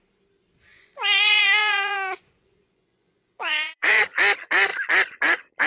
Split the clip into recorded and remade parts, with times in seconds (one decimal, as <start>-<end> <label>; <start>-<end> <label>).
0.0-0.7 recorded; 0.7-4.1 remade; 4.1-5.7 recorded